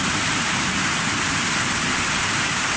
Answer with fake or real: real